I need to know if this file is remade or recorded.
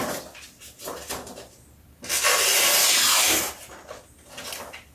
recorded